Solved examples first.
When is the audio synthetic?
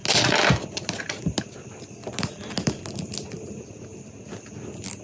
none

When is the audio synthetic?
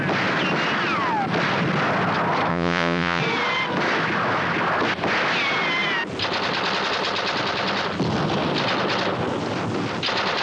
2.5-3.2 (vocoder, Vocos)